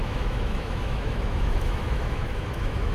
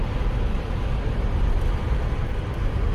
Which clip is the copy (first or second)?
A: first